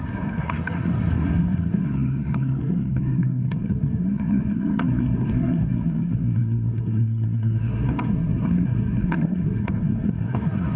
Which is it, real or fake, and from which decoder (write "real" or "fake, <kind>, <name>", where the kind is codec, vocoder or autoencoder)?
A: fake, codec, SNAC